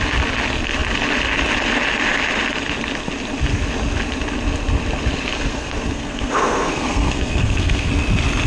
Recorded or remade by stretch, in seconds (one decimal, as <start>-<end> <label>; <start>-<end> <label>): 0.0-5.5 recorded; 5.5-7.9 remade; 7.9-8.5 recorded